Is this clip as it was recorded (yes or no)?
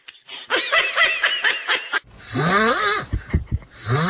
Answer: yes